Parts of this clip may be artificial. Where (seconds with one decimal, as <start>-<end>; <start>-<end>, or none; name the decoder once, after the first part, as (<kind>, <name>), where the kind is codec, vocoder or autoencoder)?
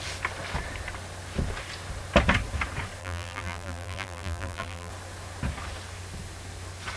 3.0-4.9 (vocoder, BigVGAN v2)